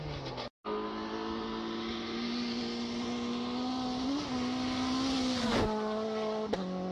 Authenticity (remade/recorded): recorded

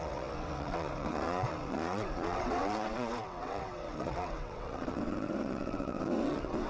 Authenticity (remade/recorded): remade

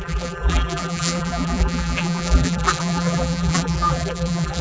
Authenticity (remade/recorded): remade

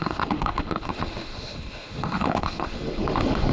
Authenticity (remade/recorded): remade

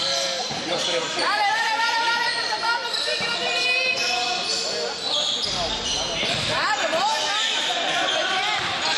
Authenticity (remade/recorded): recorded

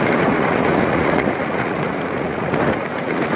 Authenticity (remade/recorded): remade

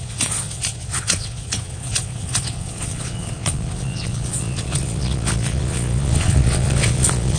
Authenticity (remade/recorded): remade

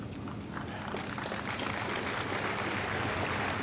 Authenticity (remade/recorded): recorded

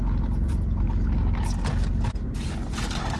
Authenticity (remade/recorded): recorded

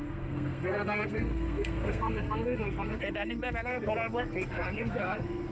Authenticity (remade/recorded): remade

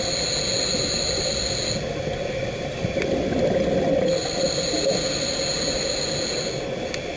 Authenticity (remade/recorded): recorded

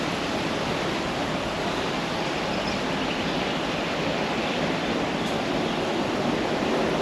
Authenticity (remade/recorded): recorded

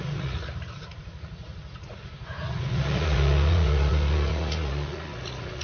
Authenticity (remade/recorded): remade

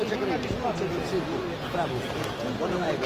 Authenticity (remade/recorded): recorded